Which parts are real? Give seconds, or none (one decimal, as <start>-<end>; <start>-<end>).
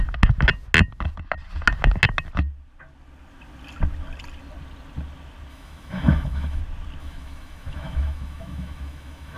0.0-5.5; 6.6-7.0